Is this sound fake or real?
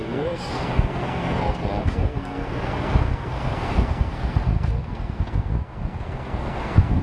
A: fake